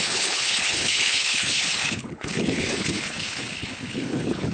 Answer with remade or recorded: remade